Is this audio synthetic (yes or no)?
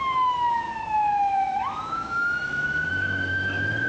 yes